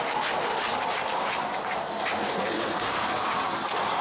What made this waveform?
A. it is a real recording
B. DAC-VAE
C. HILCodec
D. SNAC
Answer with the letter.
A